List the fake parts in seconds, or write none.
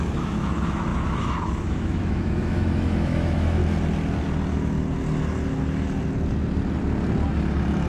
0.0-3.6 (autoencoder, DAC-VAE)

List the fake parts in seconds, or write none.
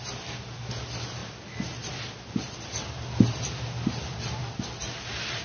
none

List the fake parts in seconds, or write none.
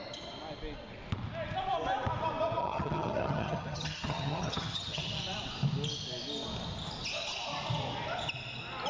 2.6-5.2 (vocoder, HiFi-GAN)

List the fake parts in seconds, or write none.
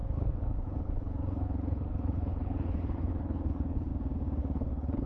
0.0-3.9 (codec, HILCodec); 4.4-5.1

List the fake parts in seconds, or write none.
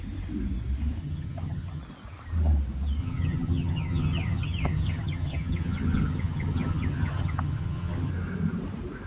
1.0-1.8 (vocoder, HiFi-GAN); 3.0-8.1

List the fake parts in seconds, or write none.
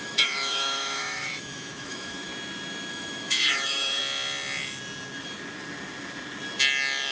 0.0-2.3 (autoencoder, DAC-VAE); 2.9-4.0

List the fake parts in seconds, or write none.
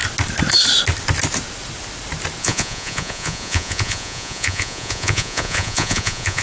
2.4-6.4 (vocoder, Vocos)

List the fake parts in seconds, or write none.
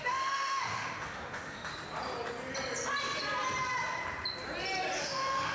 0.0-1.7 (autoencoder, DAC-VAE); 5.0-5.5